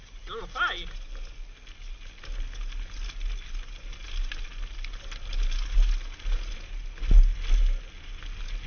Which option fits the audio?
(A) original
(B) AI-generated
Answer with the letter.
A